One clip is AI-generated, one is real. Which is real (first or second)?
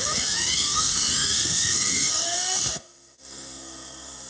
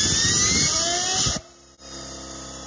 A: second